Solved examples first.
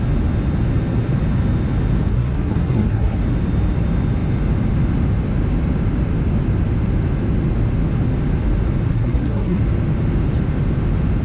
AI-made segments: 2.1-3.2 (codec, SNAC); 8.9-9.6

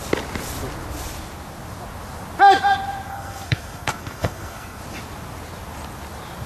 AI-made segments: 3.1-4.8 (codec, SNAC)

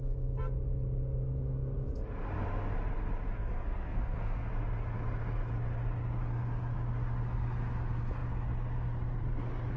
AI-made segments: 3.3-4.5 (codec, SNAC)

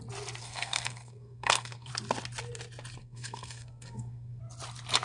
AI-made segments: 0.4-1.9 (codec, SNAC); 3.0-4.4

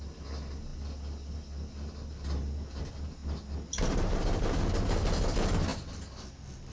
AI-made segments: none

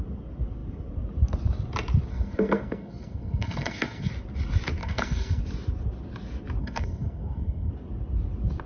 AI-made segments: 2.1-4.1 (codec, SNAC); 4.8-5.4; 6.6-7.7

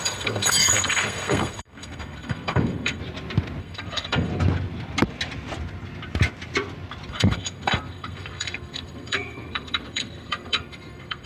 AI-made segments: 0.0-3.0 (codec, SNAC); 3.6-4.3; 7.1-11.3